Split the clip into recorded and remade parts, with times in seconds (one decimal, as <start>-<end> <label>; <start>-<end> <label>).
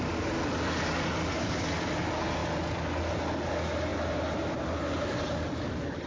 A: 0.0-6.1 recorded